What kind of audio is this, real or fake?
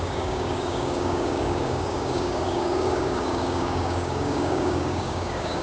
fake